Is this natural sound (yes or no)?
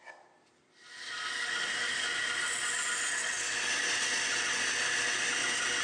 yes